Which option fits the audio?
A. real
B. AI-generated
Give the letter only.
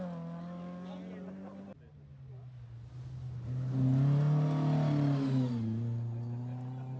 A